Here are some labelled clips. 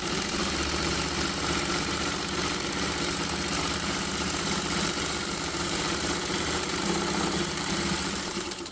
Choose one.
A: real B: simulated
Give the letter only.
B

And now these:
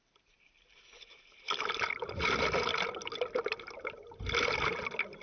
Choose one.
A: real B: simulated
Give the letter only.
A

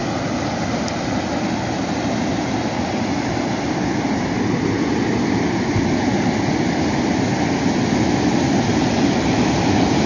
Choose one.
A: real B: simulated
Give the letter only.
A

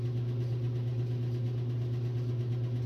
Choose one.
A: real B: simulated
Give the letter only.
A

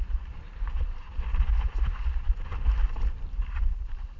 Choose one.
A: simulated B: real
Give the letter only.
A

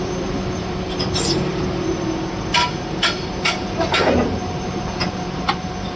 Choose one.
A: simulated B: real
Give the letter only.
A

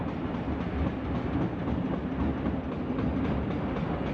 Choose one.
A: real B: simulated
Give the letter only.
A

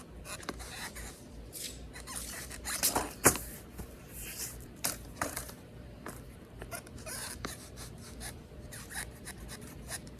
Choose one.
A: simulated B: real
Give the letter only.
A